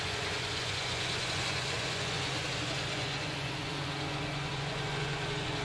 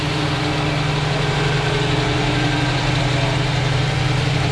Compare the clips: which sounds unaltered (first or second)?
second